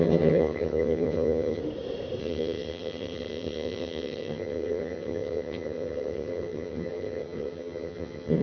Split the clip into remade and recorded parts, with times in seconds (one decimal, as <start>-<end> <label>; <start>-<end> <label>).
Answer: 0.0-1.6 remade; 1.6-2.2 recorded; 2.2-8.4 remade